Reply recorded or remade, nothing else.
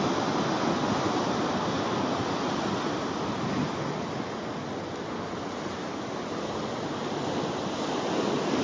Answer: recorded